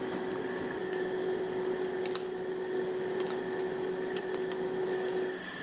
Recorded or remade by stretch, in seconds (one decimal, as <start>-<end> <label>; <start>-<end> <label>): 0.0-5.6 recorded